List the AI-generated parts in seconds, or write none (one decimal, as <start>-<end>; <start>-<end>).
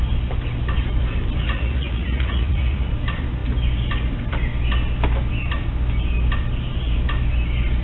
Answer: 1.4-2.9